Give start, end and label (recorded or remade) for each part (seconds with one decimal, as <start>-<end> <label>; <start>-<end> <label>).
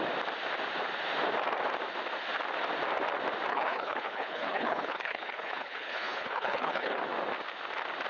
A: 0.0-3.5 recorded; 3.5-7.0 remade; 7.0-8.1 recorded